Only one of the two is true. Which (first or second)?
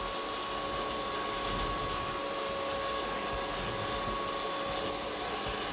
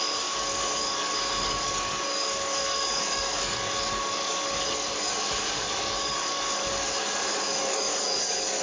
first